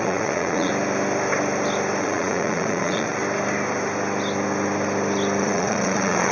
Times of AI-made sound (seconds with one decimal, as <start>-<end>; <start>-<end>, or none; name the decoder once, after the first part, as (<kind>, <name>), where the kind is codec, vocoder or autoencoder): 0.0-0.7 (vocoder, Vocos); 2.0-3.2; 5.4-6.3